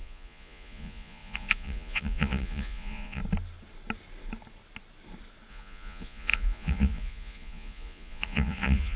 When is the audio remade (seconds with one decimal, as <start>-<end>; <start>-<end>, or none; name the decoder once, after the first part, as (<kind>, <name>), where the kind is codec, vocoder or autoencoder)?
0.0-3.2 (vocoder, Vocos); 5.5-9.0